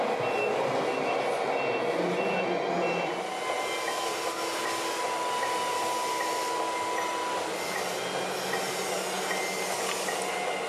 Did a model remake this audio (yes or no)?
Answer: no